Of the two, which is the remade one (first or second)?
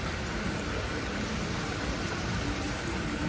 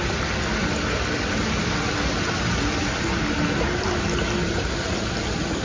first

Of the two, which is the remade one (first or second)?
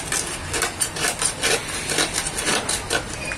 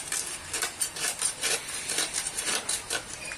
second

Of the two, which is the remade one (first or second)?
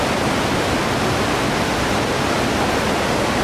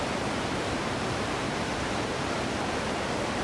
second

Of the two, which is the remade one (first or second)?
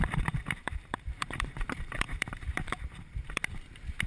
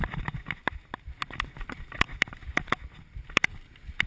first